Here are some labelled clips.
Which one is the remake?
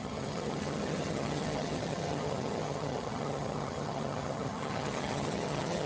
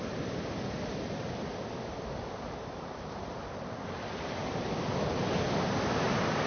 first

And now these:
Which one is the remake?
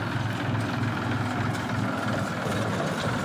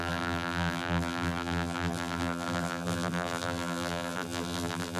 second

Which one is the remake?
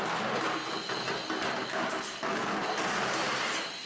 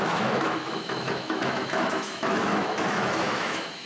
second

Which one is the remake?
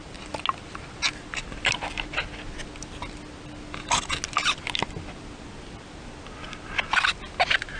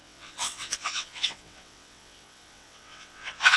second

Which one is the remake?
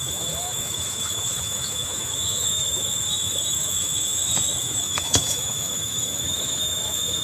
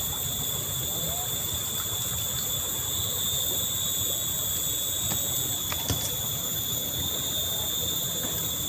first